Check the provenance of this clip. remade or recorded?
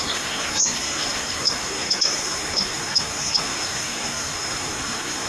remade